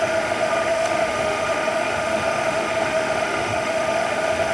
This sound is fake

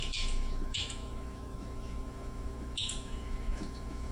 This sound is fake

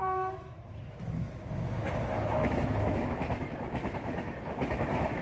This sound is fake